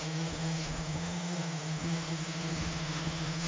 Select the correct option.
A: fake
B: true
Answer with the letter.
A